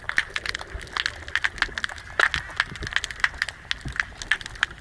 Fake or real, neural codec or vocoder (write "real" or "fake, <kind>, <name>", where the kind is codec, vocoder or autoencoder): real